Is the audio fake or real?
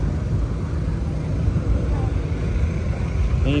real